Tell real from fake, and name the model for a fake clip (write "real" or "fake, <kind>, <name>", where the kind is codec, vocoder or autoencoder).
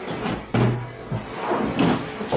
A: real